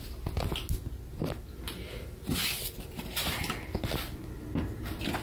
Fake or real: real